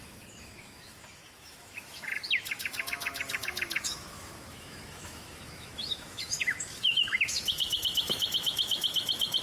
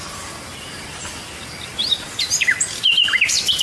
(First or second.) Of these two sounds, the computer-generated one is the first